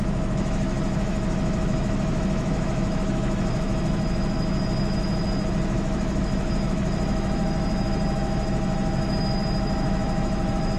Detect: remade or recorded remade